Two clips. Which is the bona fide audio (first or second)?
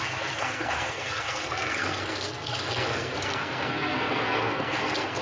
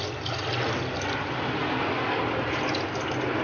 second